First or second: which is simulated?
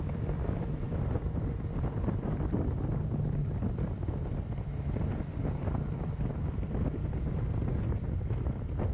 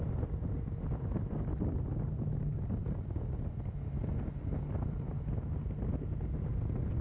first